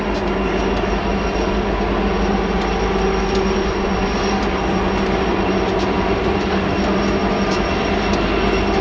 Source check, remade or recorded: recorded